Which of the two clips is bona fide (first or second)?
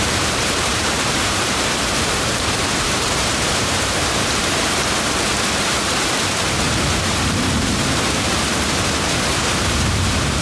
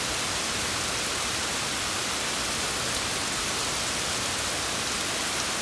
second